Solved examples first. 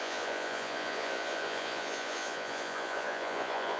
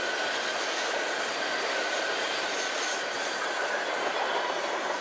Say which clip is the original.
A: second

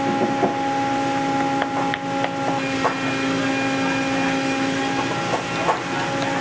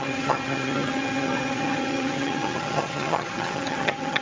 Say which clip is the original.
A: first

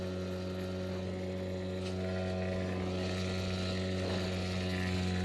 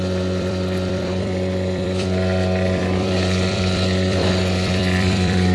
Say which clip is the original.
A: first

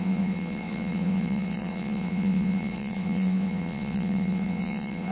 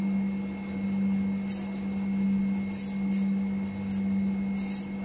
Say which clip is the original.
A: second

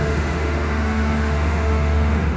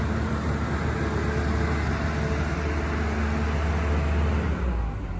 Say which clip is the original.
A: second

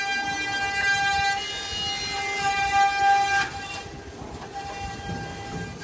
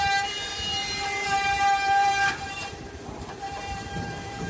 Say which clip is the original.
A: first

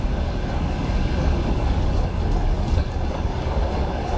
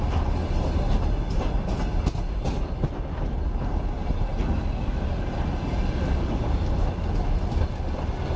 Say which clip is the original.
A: second